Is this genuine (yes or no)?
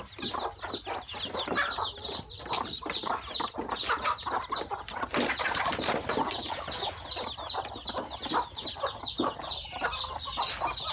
yes